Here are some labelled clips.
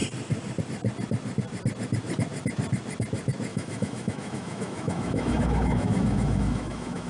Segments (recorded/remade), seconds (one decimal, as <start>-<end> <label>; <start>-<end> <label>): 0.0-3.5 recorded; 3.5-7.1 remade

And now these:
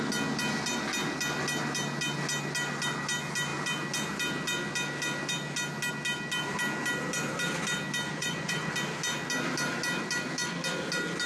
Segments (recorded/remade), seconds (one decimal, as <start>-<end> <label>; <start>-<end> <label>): 0.0-8.1 recorded; 8.1-8.7 remade; 8.7-11.3 recorded

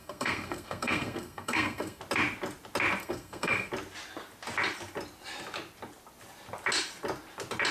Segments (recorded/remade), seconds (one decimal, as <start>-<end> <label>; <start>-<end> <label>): 0.0-2.0 remade; 2.0-3.0 recorded; 3.0-3.7 remade; 3.7-7.7 recorded